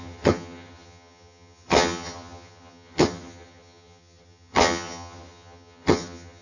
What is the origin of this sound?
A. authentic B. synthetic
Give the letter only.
B